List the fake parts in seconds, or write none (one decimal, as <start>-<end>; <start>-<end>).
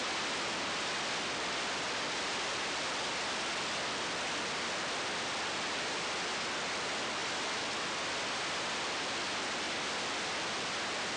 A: none